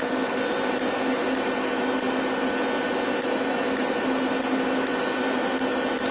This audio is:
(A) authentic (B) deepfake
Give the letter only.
A